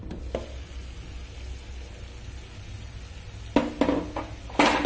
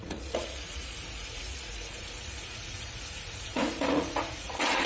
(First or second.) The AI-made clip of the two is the second